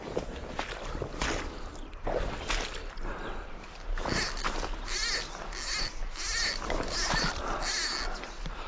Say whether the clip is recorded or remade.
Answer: recorded